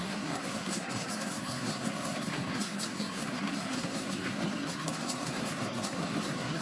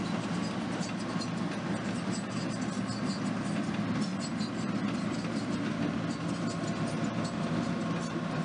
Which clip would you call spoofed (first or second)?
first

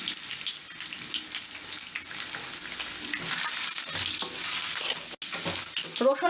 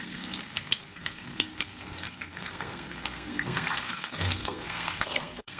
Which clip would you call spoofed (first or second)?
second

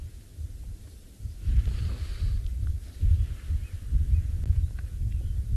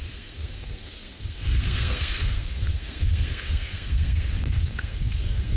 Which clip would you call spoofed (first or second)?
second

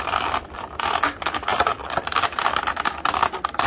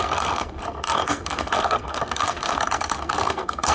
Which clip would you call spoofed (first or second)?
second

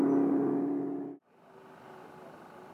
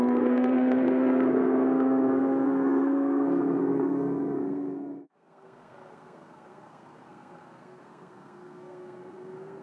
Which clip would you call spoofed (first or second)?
second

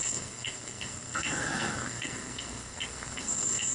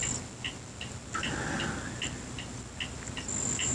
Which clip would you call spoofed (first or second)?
first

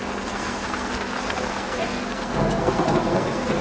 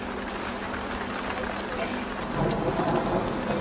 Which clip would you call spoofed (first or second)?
first